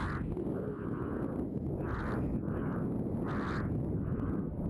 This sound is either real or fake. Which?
real